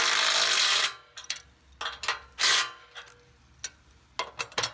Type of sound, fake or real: real